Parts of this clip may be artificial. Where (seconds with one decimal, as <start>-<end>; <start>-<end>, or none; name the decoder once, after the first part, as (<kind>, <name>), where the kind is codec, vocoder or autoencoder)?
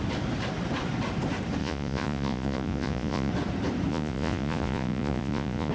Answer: 1.6-3.3 (vocoder, Vocos); 3.9-5.7